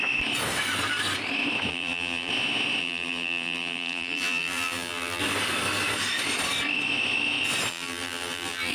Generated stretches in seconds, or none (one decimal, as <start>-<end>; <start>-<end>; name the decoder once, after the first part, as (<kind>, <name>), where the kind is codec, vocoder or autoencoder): 1.7-2.3 (vocoder, BigVGAN v2); 2.8-5.2; 7.7-8.7